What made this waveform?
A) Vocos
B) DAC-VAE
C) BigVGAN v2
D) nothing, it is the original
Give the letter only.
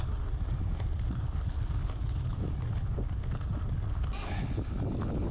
D